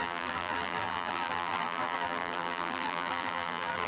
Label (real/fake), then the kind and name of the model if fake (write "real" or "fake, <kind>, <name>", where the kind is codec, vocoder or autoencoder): fake, vocoder, BigVGAN v2